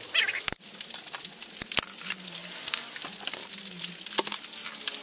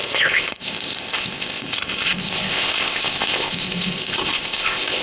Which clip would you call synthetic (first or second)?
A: second